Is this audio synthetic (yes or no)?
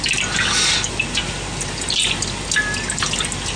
no